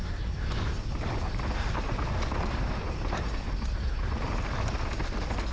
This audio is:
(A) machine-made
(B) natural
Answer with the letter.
B